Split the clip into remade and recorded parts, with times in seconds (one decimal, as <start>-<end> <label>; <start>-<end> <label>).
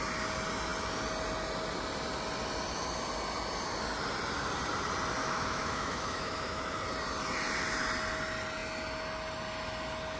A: 0.0-5.2 recorded; 5.2-6.6 remade; 6.6-10.2 recorded